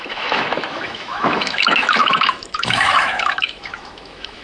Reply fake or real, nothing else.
fake